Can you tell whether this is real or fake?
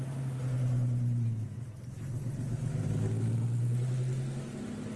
real